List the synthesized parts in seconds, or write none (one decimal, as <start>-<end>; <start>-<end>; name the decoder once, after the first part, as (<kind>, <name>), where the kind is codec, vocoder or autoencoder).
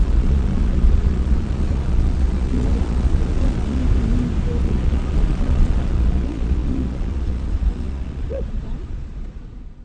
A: 0.0-3.8 (vocoder, Vocos); 4.6-9.8